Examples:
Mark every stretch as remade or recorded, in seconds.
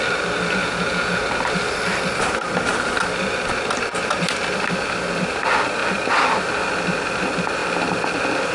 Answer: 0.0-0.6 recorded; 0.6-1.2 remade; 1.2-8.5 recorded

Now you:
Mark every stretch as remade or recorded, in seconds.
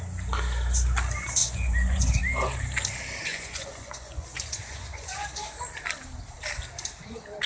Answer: 0.0-1.4 recorded; 1.4-2.2 remade; 2.2-3.3 recorded; 3.3-5.4 remade; 5.4-7.5 recorded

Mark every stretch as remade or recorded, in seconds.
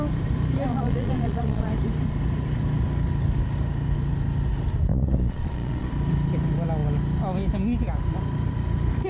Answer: 0.0-0.7 recorded; 0.7-1.7 remade; 1.7-4.9 recorded; 4.9-5.9 remade; 5.9-9.1 recorded